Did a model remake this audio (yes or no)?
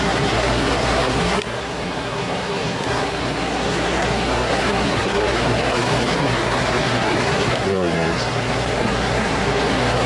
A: yes